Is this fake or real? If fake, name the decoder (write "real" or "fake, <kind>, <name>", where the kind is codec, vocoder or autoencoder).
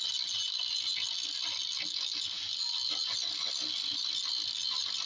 real